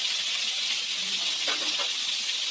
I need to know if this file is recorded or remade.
recorded